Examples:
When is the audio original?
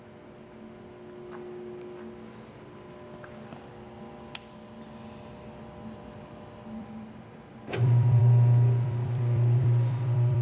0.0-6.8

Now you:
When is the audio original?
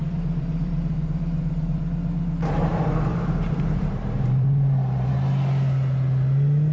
1.8-2.7; 5.1-6.7